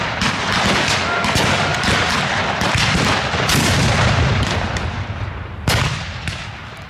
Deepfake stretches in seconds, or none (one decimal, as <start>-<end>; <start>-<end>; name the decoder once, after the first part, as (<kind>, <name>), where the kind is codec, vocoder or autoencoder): 1.7-5.8 (vocoder, BigVGAN v2)